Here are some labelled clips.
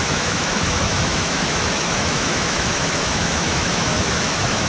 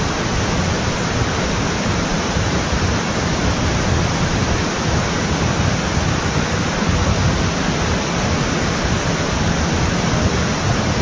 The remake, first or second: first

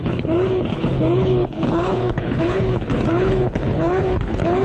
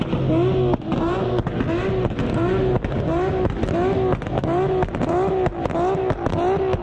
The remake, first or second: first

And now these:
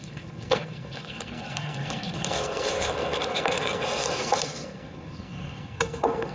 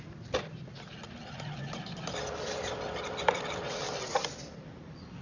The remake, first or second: first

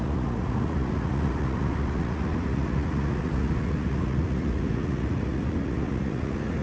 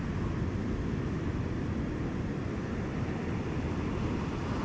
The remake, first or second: first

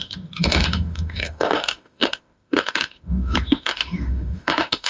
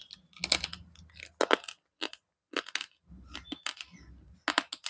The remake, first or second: first